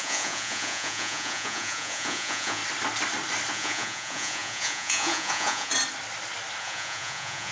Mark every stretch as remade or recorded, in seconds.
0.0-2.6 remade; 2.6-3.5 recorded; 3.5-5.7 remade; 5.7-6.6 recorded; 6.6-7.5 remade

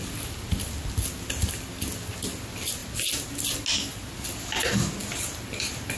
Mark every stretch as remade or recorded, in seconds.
0.0-6.0 recorded